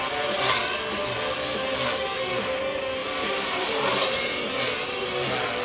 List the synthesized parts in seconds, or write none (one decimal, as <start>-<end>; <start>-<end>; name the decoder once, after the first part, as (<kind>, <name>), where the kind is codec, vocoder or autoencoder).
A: 3.0-4.4 (vocoder, BigVGAN v2)